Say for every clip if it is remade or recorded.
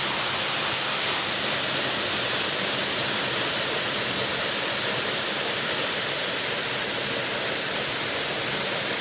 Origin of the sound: recorded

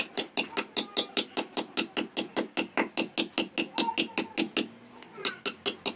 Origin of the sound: recorded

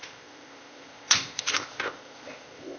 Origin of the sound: remade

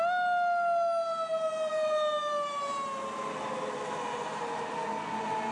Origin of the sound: recorded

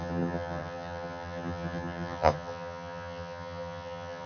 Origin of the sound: remade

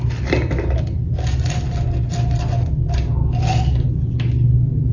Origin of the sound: recorded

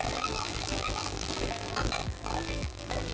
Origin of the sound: remade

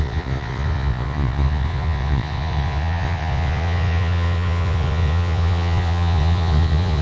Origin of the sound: remade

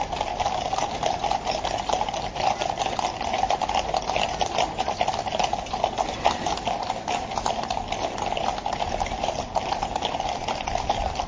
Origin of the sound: recorded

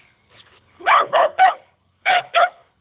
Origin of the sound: remade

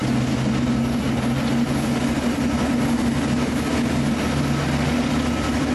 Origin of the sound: recorded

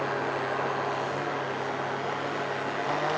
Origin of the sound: recorded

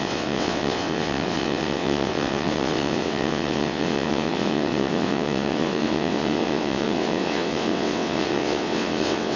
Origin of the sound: remade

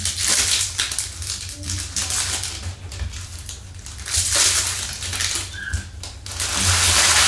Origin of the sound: recorded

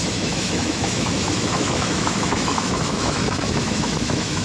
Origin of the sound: remade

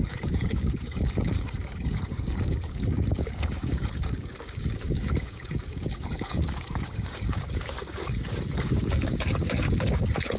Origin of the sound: remade